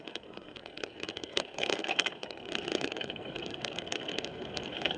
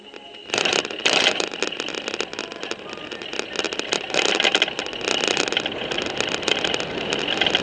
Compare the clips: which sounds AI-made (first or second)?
first